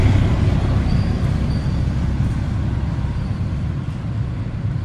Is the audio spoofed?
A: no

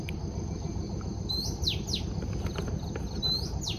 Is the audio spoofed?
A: no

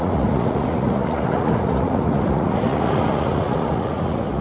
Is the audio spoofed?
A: yes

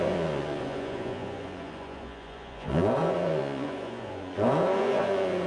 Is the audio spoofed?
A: yes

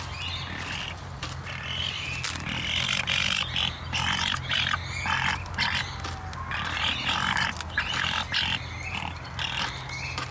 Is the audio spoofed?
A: no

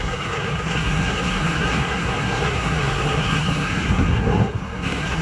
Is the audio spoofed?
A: yes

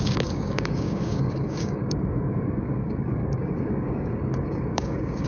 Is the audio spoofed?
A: yes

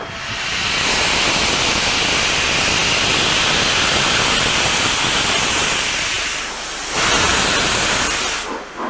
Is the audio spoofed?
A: no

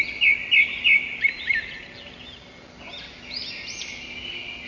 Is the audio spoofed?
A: no